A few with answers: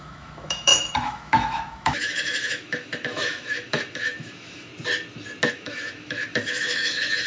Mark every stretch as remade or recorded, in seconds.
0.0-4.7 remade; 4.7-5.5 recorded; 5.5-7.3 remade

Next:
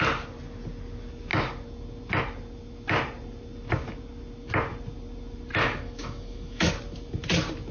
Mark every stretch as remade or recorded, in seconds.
0.0-5.5 recorded; 5.5-6.7 remade; 6.7-7.7 recorded

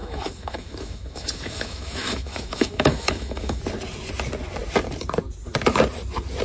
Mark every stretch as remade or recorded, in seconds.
0.0-3.6 remade; 3.6-6.4 recorded

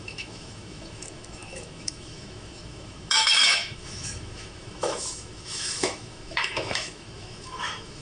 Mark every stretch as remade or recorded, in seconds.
0.0-8.0 remade

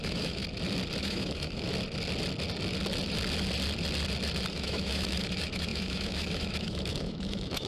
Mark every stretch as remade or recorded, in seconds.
0.0-0.4 remade; 0.4-1.0 recorded; 1.0-1.7 remade; 1.7-4.5 recorded; 4.5-7.7 remade

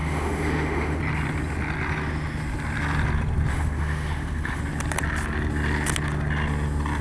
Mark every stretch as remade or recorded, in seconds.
0.0-1.0 remade; 1.0-3.5 recorded; 3.5-4.6 remade; 4.6-7.0 recorded

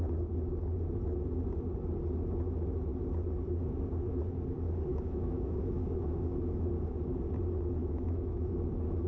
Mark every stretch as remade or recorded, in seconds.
0.0-4.9 recorded; 4.9-6.7 remade; 6.7-7.8 recorded; 7.8-8.6 remade; 8.6-9.1 recorded

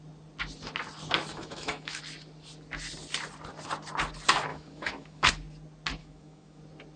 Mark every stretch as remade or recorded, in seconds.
0.0-1.3 recorded; 1.3-2.0 remade; 2.0-4.5 recorded; 4.5-5.3 remade; 5.3-6.0 recorded; 6.0-6.6 remade; 6.6-7.0 recorded